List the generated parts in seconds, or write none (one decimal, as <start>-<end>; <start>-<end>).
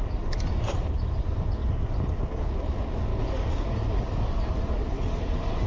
none